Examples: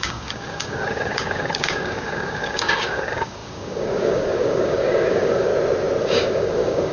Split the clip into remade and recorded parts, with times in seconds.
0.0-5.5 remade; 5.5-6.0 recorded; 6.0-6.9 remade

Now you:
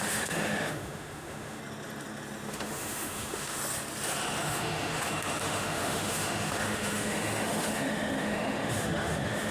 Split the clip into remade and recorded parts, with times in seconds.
0.0-1.6 remade; 1.6-2.5 recorded; 2.5-3.6 remade; 3.6-4.4 recorded; 4.4-9.5 remade

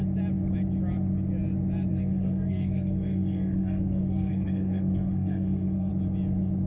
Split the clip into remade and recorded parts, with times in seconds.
0.0-1.9 recorded; 1.9-5.9 remade; 5.9-6.7 recorded

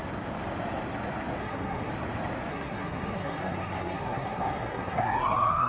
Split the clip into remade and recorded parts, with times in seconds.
0.0-1.4 recorded; 1.4-1.9 remade; 1.9-2.5 recorded; 2.5-5.7 remade

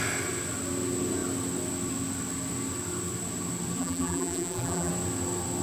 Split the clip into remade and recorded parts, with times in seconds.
0.0-3.8 recorded; 3.8-4.9 remade; 4.9-5.6 recorded

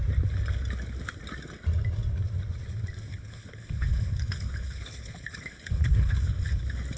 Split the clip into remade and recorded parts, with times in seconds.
0.0-3.1 recorded; 3.1-6.6 remade; 6.6-7.0 recorded

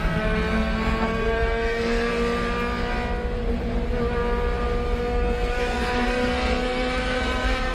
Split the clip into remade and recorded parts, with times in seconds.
0.0-2.1 remade; 2.1-5.0 recorded; 5.0-7.7 remade